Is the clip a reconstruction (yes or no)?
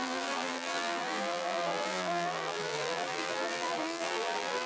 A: yes